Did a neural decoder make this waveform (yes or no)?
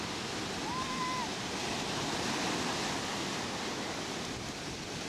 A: no